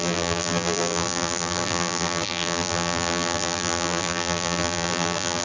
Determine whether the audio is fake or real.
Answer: fake